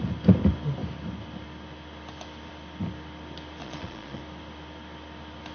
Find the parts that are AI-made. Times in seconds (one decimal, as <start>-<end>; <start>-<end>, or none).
3.6-4.2